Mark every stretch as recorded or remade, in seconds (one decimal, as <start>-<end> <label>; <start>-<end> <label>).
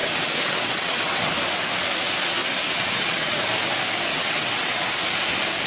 0.0-1.3 remade; 1.3-2.4 recorded; 2.4-3.4 remade; 3.4-4.1 recorded; 4.1-4.8 remade; 4.8-5.7 recorded